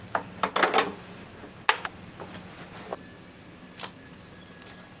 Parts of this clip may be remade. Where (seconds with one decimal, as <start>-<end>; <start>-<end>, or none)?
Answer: none